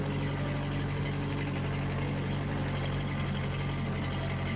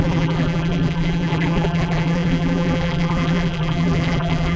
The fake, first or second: second